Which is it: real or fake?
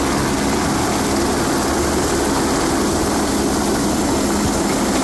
real